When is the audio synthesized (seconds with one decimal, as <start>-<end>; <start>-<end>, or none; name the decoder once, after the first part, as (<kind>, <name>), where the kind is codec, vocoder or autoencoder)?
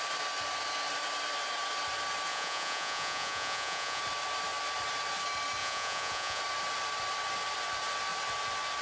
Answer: 2.3-4.0 (vocoder, Vocos); 5.6-6.4